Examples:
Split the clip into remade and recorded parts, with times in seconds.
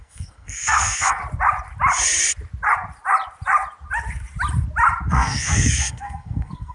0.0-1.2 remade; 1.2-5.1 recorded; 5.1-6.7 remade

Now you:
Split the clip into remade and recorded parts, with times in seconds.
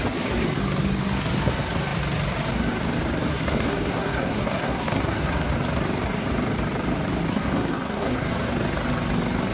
0.0-3.3 recorded; 3.3-5.5 remade; 5.5-7.3 recorded; 7.3-8.3 remade; 8.3-9.5 recorded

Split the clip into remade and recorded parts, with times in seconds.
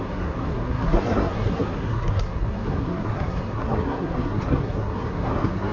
0.0-5.7 remade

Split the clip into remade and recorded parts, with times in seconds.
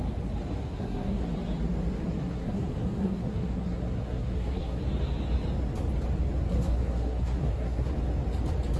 0.0-0.6 recorded; 0.6-1.2 remade; 1.2-2.2 recorded; 2.2-4.8 remade; 4.8-6.5 recorded; 6.5-7.9 remade; 7.9-8.8 recorded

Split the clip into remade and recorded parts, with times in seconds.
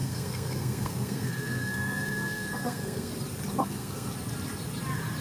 0.0-3.1 remade; 3.1-3.6 recorded; 3.6-4.1 remade; 4.1-5.2 recorded